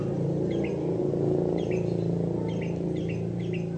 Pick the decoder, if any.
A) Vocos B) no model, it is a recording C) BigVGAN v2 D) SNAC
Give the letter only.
B